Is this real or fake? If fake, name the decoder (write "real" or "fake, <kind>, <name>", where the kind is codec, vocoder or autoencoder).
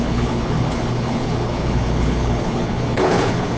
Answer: fake, codec, HILCodec